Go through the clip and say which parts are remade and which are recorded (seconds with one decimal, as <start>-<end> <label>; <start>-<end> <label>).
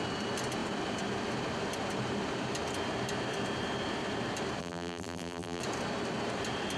0.0-4.6 recorded; 4.6-5.6 remade; 5.6-6.8 recorded